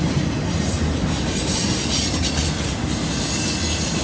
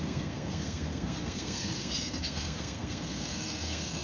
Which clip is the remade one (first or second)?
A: second